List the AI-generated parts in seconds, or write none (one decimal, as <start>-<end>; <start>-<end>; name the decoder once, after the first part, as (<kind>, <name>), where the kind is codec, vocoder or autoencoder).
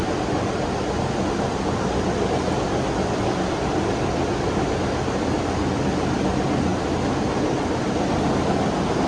none